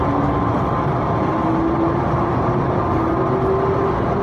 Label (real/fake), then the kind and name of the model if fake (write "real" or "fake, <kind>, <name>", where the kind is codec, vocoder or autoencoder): real